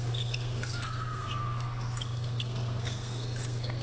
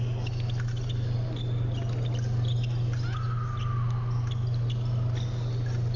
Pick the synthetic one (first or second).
first